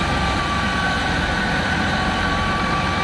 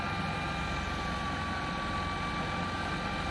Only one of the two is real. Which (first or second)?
second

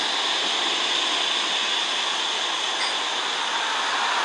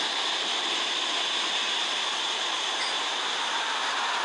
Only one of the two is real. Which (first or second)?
first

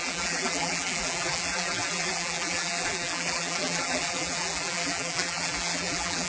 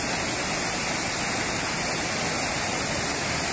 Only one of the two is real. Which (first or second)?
second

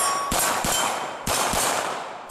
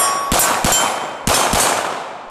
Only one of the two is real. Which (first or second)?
second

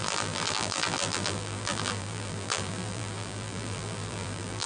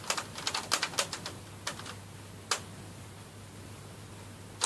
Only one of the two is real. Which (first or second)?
second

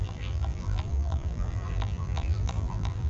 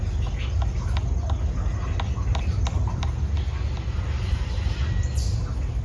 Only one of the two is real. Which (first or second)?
second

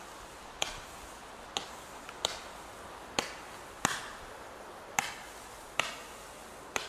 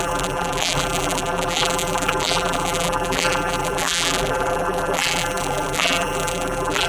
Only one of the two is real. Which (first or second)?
first